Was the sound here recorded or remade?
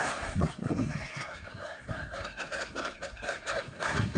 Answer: remade